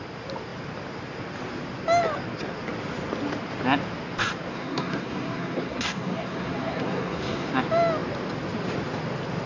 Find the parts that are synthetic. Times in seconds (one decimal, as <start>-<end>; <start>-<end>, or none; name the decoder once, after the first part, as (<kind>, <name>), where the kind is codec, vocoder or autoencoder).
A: 4.5-7.5 (codec, SNAC)